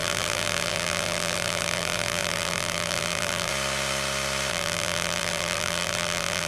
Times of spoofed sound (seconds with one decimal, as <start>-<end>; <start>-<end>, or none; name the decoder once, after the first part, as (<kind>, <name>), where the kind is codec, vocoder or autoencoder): 0.0-3.5 (vocoder, BigVGAN v2); 4.5-6.5